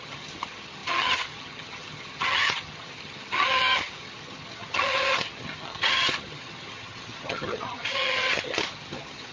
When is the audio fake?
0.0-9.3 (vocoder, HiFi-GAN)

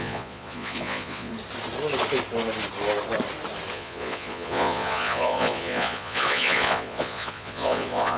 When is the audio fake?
0.0-1.3 (vocoder, Vocos); 3.7-8.2

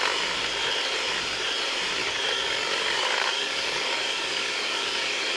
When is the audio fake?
2.0-5.4 (codec, DAC)

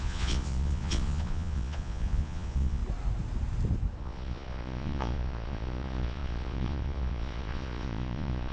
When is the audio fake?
0.0-2.8 (vocoder, Vocos); 4.0-8.5